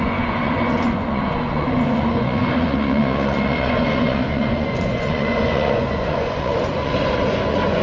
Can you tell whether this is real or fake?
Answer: fake